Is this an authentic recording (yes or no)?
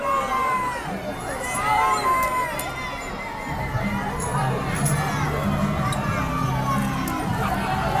yes